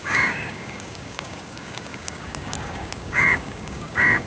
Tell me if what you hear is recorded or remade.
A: remade